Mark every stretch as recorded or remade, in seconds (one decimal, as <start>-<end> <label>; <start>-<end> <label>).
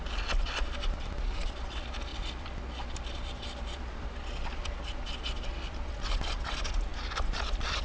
0.0-7.8 recorded